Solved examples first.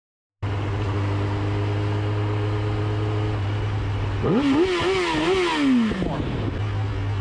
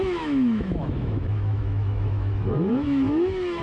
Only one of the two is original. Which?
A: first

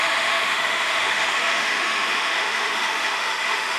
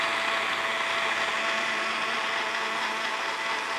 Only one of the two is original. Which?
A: second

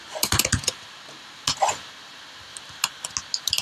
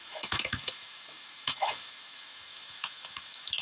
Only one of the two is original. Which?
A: first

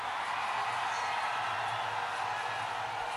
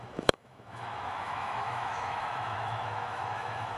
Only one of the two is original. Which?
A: first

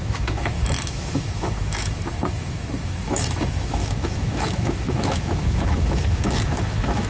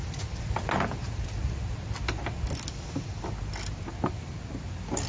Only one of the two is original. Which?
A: second